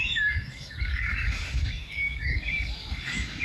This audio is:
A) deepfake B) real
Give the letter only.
A